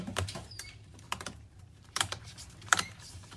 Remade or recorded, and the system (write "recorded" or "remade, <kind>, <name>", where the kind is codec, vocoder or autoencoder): remade, vocoder, BigVGAN v2